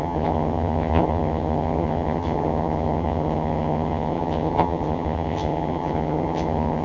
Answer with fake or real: fake